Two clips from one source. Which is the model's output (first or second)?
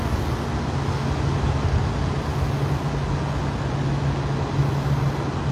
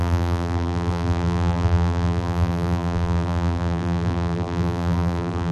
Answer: second